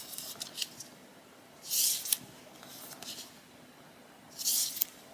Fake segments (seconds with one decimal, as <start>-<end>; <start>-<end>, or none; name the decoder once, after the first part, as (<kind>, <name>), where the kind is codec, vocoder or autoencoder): none